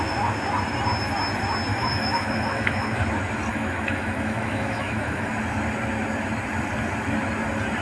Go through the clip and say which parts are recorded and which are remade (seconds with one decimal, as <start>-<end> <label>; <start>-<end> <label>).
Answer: 0.0-1.7 recorded; 1.7-3.0 remade; 3.0-3.5 recorded; 3.5-5.3 remade; 5.3-7.8 recorded